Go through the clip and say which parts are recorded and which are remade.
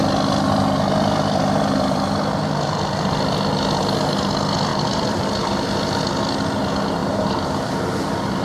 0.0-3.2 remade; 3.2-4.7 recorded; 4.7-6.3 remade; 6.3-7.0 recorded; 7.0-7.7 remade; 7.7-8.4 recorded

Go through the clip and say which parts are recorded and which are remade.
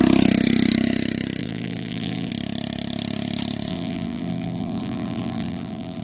0.0-1.4 recorded; 1.4-2.3 remade; 2.3-3.7 recorded; 3.7-6.0 remade